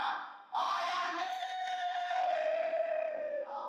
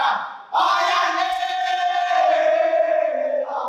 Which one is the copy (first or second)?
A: first